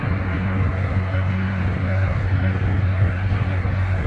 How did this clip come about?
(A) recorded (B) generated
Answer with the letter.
B